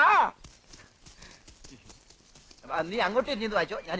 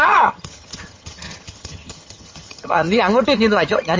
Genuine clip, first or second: first